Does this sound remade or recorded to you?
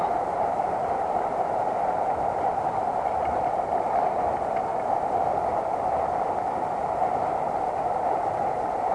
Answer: remade